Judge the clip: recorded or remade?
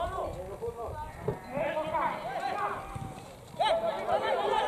recorded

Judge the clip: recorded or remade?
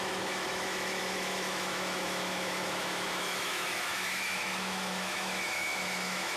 remade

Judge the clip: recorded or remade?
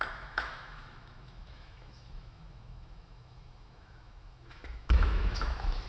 remade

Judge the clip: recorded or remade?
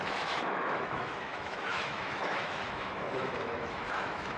remade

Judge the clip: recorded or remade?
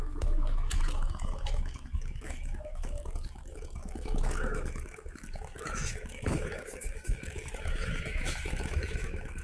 remade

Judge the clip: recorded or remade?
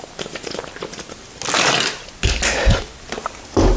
recorded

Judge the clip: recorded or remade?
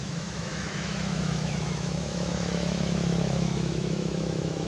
remade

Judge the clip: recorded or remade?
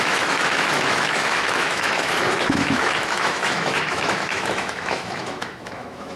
remade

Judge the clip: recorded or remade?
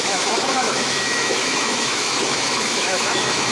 remade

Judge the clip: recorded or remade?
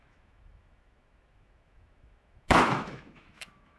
remade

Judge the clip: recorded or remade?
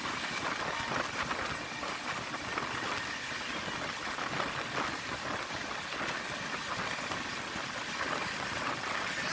recorded